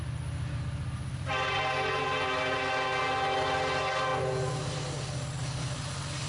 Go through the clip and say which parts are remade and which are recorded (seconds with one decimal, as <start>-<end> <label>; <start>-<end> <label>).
0.0-6.3 recorded